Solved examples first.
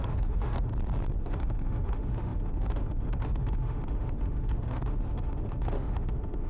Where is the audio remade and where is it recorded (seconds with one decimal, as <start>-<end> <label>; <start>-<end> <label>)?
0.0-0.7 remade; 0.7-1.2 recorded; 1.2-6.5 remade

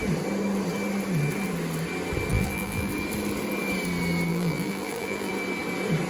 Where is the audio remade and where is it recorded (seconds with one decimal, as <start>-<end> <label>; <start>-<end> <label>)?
0.0-2.3 recorded; 2.3-2.9 remade; 2.9-4.3 recorded; 4.3-5.3 remade; 5.3-6.1 recorded

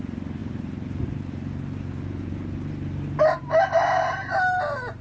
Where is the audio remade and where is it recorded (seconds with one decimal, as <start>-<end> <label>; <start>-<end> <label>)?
0.0-5.0 recorded

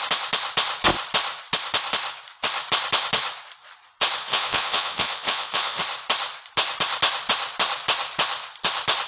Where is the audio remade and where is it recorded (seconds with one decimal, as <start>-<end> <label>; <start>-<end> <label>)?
0.0-4.2 recorded; 4.2-5.8 remade; 5.8-9.1 recorded

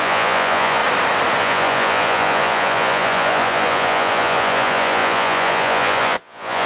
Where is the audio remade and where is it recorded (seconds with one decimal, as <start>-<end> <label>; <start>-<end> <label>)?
0.0-0.8 remade; 0.8-1.4 recorded; 1.4-6.7 remade

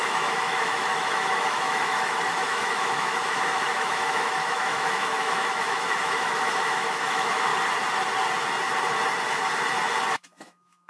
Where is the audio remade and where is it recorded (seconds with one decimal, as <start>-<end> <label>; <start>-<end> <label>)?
0.0-7.5 remade; 7.5-10.1 recorded; 10.1-10.9 remade

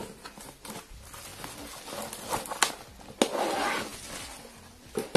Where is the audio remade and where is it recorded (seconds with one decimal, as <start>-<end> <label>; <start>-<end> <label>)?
0.0-5.2 recorded

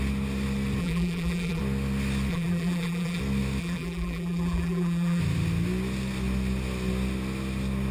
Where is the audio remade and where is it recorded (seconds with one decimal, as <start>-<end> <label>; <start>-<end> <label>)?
0.0-0.8 recorded; 0.8-1.6 remade; 1.6-2.3 recorded; 2.3-3.2 remade; 3.2-3.6 recorded; 3.6-5.2 remade; 5.2-7.9 recorded